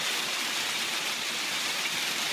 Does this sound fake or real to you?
fake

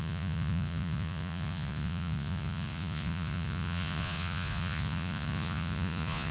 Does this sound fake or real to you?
fake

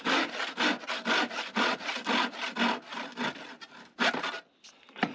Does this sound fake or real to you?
real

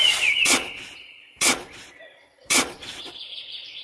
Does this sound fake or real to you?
fake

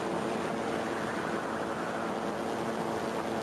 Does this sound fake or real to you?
real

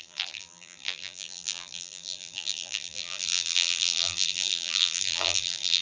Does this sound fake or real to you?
fake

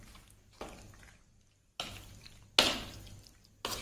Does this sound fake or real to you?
real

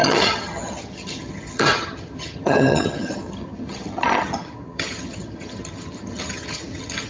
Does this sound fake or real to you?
fake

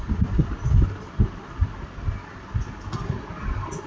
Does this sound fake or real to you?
real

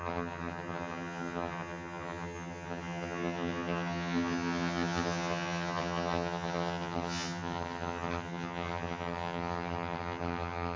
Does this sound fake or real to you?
fake